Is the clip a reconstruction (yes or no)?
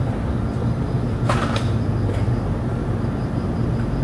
no